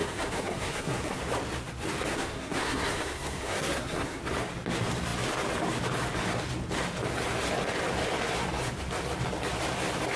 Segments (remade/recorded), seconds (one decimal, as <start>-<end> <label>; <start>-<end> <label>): 0.0-1.2 remade; 1.2-2.1 recorded; 2.1-4.2 remade; 4.2-10.2 recorded